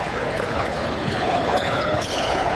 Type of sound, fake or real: fake